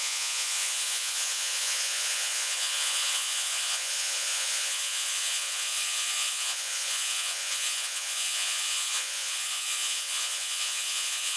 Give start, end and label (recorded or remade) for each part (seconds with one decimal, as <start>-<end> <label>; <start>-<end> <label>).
0.0-11.4 remade